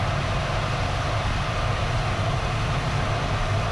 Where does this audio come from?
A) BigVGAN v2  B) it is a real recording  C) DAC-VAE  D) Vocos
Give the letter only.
B